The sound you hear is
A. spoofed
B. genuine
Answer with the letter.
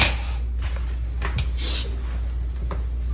B